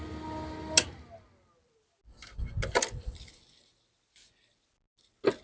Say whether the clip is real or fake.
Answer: real